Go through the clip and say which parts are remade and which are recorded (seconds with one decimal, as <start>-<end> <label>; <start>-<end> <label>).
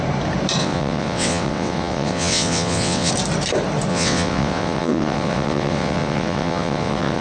0.0-0.6 recorded; 0.6-3.1 remade; 3.1-3.9 recorded; 3.9-7.2 remade